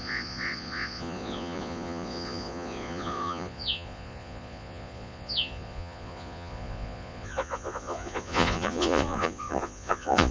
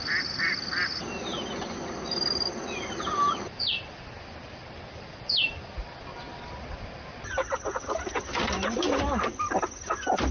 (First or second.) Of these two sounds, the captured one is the second